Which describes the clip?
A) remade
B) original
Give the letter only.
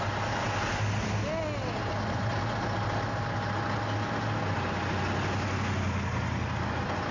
B